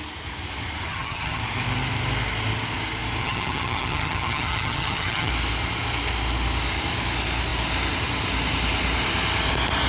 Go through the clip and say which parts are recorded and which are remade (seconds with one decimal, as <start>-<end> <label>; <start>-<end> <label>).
0.0-0.9 recorded; 0.9-1.4 remade; 1.4-3.2 recorded; 3.2-5.3 remade; 5.3-9.9 recorded